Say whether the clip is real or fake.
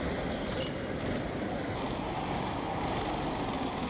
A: real